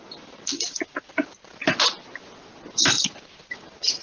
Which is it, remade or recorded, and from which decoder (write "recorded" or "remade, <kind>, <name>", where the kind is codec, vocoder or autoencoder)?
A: recorded